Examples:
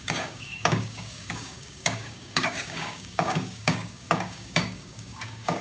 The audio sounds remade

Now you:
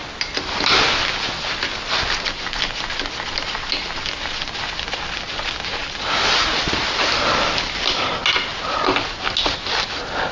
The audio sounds recorded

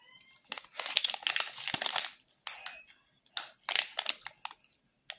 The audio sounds recorded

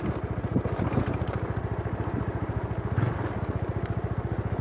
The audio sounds recorded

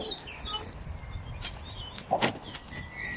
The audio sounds recorded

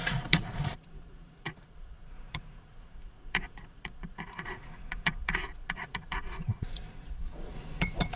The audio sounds remade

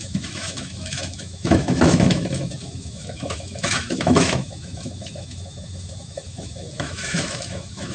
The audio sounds remade